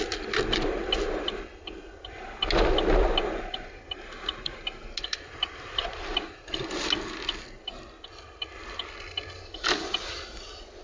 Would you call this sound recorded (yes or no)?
yes